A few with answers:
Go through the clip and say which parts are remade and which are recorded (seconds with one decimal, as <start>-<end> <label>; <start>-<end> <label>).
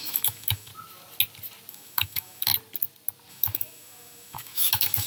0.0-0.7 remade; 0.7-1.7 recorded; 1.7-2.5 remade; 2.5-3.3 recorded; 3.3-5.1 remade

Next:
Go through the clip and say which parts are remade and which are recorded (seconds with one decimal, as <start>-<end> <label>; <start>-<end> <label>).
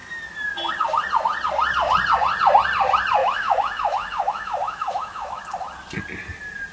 0.0-3.2 recorded; 3.2-5.4 remade; 5.4-6.7 recorded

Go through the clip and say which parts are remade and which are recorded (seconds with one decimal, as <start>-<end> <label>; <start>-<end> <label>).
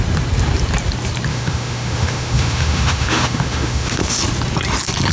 0.0-1.3 recorded; 1.3-4.2 remade; 4.2-5.1 recorded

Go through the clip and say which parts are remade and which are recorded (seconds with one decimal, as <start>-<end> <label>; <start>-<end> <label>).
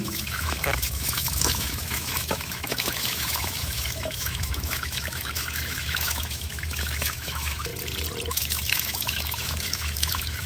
0.0-7.7 remade; 7.7-8.3 recorded; 8.3-10.5 remade